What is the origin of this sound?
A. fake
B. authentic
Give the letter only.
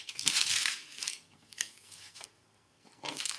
A